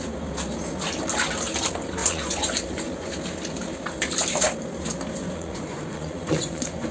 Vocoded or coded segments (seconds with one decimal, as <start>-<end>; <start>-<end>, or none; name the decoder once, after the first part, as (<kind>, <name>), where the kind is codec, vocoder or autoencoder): 2.0-3.1 (vocoder, Vocos); 5.2-6.9